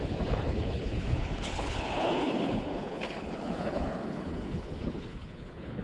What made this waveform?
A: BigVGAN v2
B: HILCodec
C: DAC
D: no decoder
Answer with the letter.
B